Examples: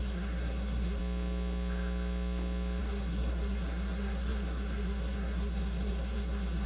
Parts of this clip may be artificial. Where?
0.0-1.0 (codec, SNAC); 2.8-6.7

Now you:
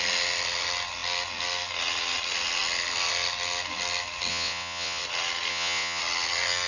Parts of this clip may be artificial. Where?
4.3-5.0 (vocoder, WaveNeXt); 5.5-6.0

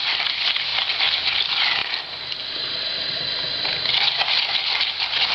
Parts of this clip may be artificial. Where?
0.0-0.7 (vocoder, BigVGAN v2); 1.4-1.8